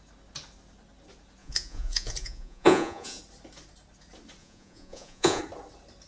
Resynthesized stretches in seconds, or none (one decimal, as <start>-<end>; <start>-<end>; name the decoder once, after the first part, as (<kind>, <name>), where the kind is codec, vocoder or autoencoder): 1.4-3.2 (vocoder, Vocos); 4.4-5.4